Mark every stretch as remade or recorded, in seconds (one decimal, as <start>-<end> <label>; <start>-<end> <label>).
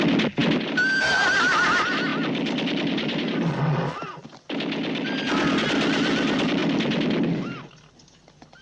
0.0-8.6 recorded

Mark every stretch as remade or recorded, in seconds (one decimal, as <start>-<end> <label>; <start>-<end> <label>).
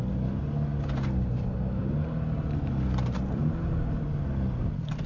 0.0-5.1 recorded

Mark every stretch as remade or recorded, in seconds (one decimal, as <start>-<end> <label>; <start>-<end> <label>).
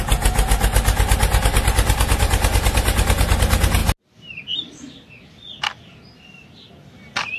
0.0-7.4 recorded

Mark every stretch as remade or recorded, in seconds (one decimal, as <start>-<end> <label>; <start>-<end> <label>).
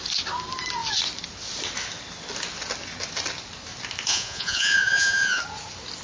0.0-4.1 recorded; 4.1-5.4 remade; 5.4-6.0 recorded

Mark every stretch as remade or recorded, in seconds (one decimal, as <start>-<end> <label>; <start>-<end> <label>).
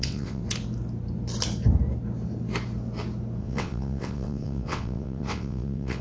0.0-0.4 remade; 0.4-3.4 recorded; 3.4-6.0 remade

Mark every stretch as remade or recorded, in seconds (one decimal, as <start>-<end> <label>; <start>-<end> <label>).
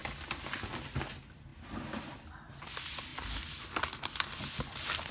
0.0-5.1 recorded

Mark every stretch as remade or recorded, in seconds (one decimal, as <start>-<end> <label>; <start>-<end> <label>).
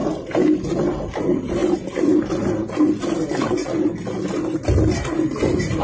0.0-5.8 recorded